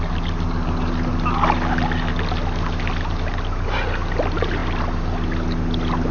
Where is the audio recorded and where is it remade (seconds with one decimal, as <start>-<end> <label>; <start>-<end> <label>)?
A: 0.0-6.1 recorded